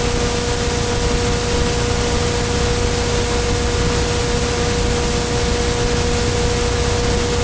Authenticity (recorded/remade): recorded